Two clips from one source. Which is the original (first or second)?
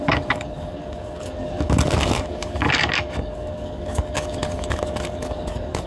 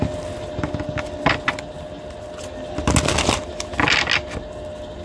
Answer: second